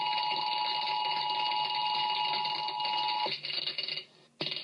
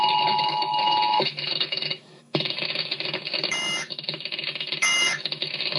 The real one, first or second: first